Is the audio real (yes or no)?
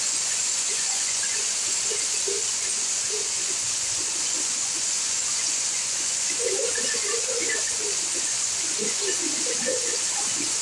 no